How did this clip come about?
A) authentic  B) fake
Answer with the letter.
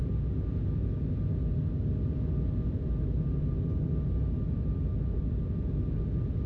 A